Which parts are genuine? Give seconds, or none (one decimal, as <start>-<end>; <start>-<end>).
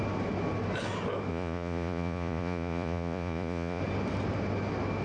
0.0-1.3; 3.8-5.0